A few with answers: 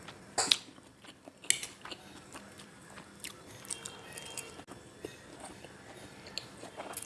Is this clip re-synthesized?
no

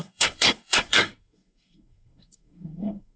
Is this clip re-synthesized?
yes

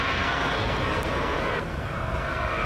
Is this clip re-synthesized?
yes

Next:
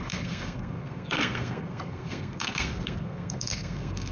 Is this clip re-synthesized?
yes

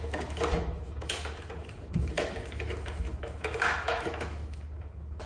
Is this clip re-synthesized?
yes